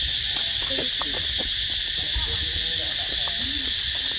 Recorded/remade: recorded